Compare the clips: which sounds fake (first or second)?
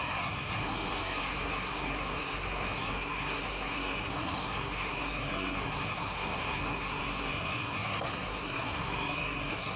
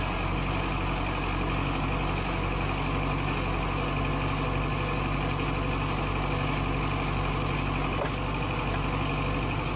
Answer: first